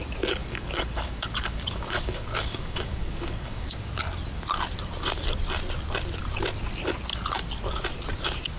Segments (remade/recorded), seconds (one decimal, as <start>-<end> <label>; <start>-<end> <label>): 0.0-0.4 recorded; 0.4-3.9 remade; 3.9-8.6 recorded